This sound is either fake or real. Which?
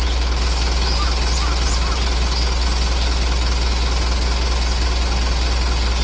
real